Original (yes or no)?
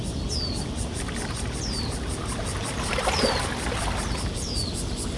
yes